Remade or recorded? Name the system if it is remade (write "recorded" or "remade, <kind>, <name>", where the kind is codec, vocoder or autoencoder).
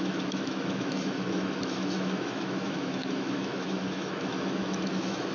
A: remade, autoencoder, DAC-VAE